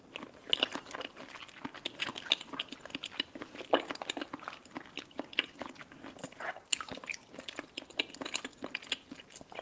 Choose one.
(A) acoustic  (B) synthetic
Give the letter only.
A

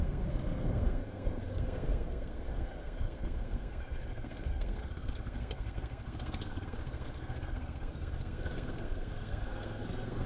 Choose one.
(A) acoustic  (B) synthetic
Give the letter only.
B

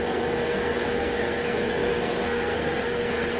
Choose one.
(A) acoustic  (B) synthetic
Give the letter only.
B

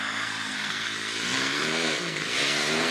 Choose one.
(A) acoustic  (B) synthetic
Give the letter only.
B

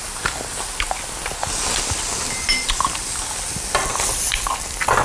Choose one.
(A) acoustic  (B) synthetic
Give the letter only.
A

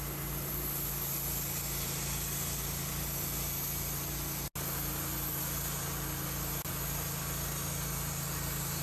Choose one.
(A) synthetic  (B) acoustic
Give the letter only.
B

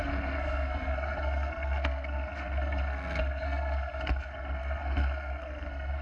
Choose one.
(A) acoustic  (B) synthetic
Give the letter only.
B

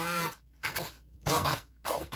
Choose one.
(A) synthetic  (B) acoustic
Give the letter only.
A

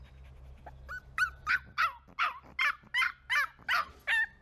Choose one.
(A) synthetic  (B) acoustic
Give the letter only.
B